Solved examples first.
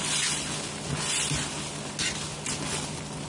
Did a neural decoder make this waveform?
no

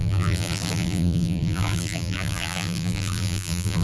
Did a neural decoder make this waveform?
yes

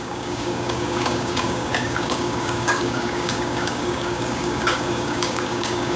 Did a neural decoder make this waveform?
yes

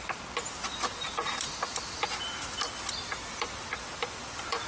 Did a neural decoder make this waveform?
yes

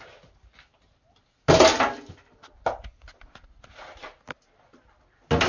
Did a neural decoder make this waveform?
no